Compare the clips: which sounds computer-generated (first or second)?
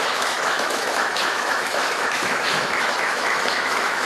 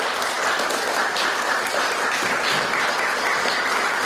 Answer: first